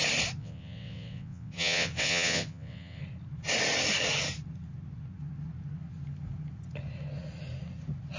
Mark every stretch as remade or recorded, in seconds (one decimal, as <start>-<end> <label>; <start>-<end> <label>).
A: 0.0-0.4 recorded; 0.4-3.0 remade; 3.0-8.2 recorded